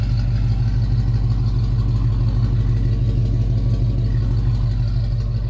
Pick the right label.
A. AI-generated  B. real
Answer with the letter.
B